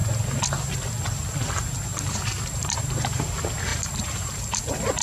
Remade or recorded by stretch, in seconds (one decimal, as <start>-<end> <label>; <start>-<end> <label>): 0.0-1.9 recorded; 1.9-3.2 remade; 3.2-3.7 recorded; 3.7-4.6 remade; 4.6-5.0 recorded